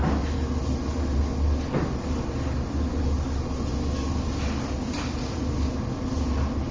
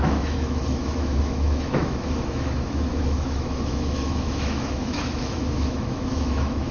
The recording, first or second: first